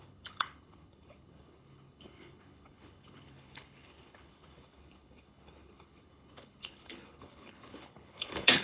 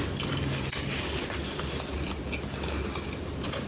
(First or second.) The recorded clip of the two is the second